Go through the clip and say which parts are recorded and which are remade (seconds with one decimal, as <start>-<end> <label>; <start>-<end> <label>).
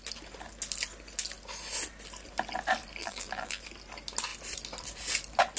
0.0-3.0 recorded; 3.0-3.6 remade; 3.6-5.6 recorded